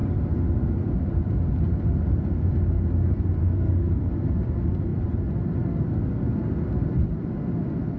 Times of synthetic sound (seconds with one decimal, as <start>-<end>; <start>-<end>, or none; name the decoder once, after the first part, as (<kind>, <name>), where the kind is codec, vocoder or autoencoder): 3.4-4.1 (codec, SNAC)